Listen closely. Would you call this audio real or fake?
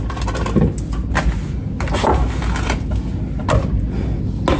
real